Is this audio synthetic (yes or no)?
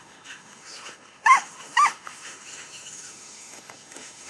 yes